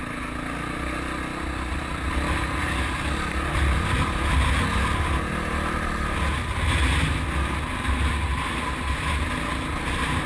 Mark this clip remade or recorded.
recorded